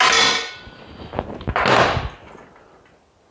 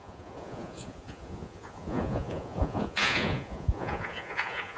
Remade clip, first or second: second